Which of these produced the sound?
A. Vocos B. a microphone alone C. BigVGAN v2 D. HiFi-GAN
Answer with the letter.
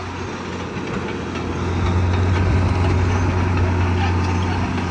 B